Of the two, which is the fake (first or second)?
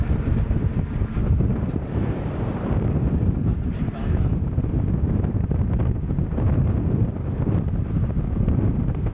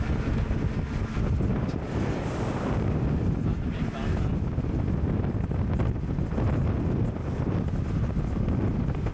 first